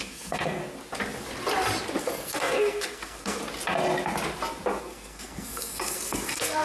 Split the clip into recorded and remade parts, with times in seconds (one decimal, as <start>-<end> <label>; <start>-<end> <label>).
0.0-0.6 remade; 0.6-2.0 recorded; 2.0-3.4 remade; 3.4-4.8 recorded; 4.8-6.6 remade

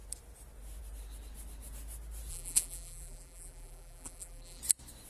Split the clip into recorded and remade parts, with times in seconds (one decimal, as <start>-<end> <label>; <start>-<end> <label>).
0.0-2.3 recorded; 2.3-4.6 remade; 4.6-5.1 recorded

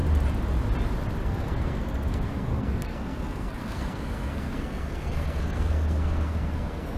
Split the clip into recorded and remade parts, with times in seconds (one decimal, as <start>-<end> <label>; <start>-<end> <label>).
0.0-1.2 recorded; 1.2-7.0 remade

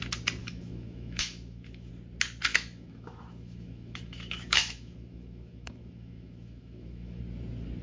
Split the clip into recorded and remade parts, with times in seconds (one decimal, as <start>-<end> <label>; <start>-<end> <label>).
0.0-0.4 recorded; 0.4-1.9 remade; 1.9-2.5 recorded; 2.5-7.2 remade; 7.2-7.8 recorded

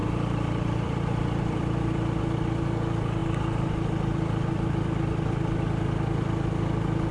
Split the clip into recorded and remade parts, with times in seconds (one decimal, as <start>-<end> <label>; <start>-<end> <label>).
0.0-2.2 remade; 2.2-7.1 recorded

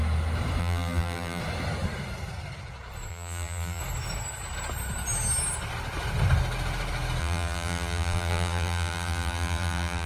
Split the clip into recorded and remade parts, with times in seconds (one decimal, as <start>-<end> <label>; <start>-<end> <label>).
0.0-0.6 recorded; 0.6-1.4 remade; 1.4-3.1 recorded; 3.1-3.8 remade; 3.8-7.2 recorded; 7.2-10.1 remade